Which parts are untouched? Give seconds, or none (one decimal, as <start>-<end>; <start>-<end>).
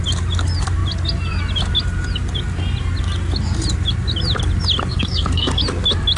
0.0-4.9; 5.6-6.2